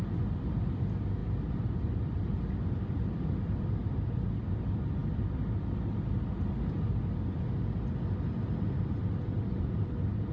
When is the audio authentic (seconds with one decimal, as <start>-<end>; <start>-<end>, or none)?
0.0-1.2; 4.3-5.0; 5.8-10.3